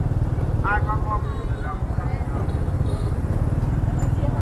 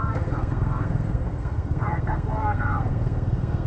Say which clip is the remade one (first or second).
second